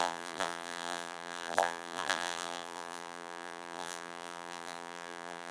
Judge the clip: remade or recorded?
remade